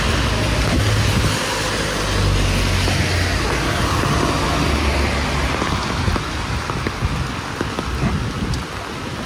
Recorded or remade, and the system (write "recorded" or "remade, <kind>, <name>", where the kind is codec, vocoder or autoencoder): recorded